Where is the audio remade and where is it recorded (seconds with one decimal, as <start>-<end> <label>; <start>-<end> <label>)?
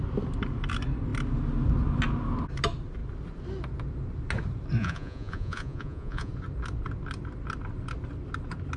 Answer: 0.0-4.8 recorded; 4.8-6.3 remade; 6.3-8.8 recorded